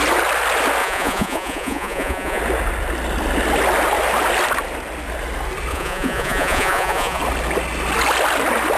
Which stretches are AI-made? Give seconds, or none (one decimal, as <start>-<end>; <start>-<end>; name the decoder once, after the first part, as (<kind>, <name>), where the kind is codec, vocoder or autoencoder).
0.8-2.4 (vocoder, Vocos); 5.7-7.2